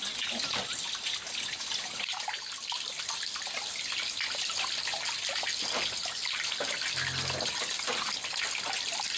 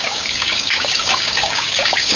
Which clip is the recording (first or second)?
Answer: first